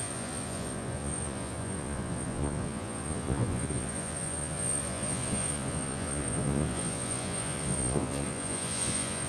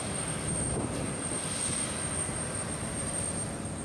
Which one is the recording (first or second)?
second